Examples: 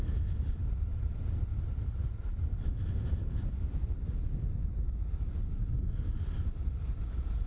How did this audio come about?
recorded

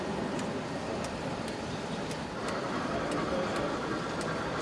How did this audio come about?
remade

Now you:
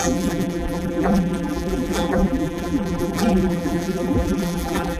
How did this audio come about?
remade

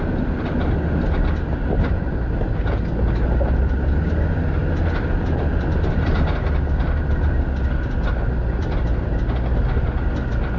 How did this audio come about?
recorded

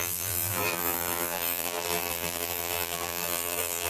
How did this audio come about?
remade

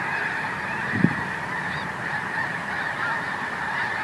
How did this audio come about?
remade